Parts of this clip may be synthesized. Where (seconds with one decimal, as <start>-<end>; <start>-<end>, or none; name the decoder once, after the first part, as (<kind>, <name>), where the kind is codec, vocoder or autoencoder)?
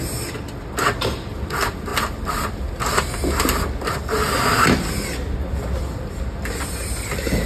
none